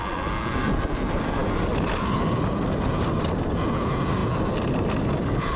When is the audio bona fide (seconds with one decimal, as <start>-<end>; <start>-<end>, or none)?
0.0-5.6